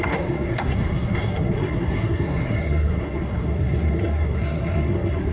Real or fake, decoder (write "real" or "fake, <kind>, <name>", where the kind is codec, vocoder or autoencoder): fake, codec, SNAC